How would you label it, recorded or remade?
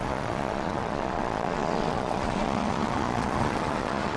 remade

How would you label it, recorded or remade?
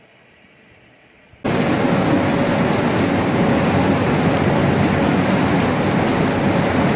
recorded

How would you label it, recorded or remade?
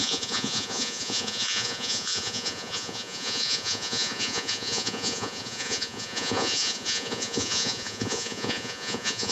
remade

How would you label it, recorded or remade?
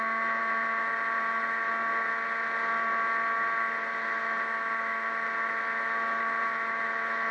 recorded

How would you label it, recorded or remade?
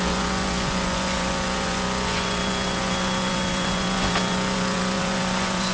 remade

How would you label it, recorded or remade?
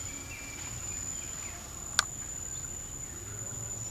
recorded